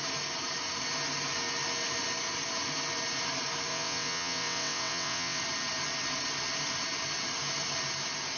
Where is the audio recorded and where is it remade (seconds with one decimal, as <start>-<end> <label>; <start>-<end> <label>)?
0.0-3.7 recorded; 3.7-5.4 remade; 5.4-8.4 recorded